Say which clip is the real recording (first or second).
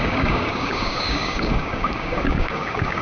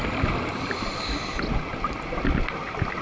second